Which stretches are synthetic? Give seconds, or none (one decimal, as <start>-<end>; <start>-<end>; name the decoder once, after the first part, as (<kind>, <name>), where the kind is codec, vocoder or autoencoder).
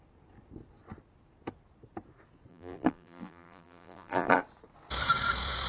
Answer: 2.5-4.4 (vocoder, BigVGAN v2)